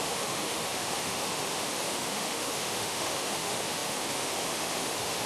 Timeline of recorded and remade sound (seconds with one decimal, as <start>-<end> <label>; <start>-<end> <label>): 0.0-5.3 remade